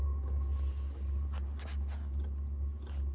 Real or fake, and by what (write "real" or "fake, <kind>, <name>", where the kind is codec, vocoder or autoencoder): real